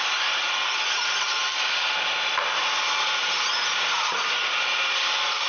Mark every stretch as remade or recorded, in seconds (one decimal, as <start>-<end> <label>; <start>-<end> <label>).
0.0-5.5 recorded